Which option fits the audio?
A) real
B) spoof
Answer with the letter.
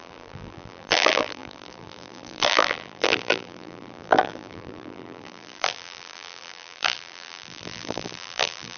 B